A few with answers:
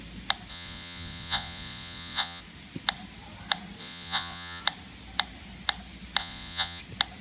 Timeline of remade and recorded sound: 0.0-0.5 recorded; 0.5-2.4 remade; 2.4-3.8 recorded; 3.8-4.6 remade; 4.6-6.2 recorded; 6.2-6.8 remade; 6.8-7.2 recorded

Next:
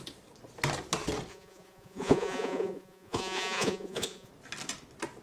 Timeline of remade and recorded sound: 0.0-1.3 recorded; 1.3-4.3 remade; 4.3-5.2 recorded

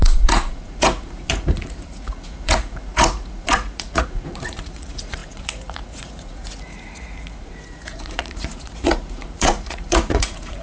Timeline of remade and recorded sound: 0.0-10.6 remade

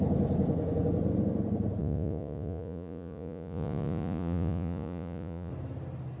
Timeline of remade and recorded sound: 0.0-1.8 recorded; 1.8-5.5 remade; 5.5-6.2 recorded

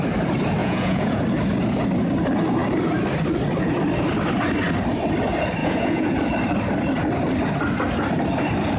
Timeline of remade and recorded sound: 0.0-0.6 recorded; 0.6-1.2 remade; 1.2-5.6 recorded; 5.6-6.1 remade; 6.1-8.8 recorded

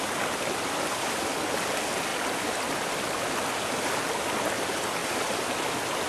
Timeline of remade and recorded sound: 0.0-6.1 recorded